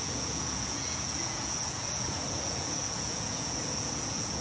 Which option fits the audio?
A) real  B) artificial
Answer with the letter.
B